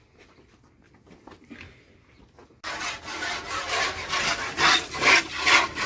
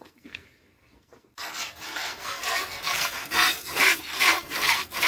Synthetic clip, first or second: second